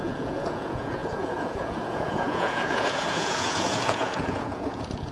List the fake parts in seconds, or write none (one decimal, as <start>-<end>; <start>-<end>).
0.0-5.1